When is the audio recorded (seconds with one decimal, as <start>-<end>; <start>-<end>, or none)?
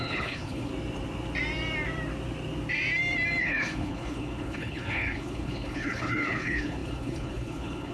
0.7-3.4